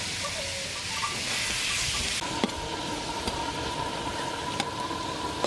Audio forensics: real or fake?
real